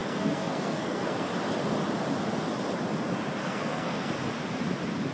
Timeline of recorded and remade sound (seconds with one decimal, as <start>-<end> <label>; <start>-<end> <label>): 0.0-1.3 remade; 1.3-3.4 recorded; 3.4-4.1 remade; 4.1-5.1 recorded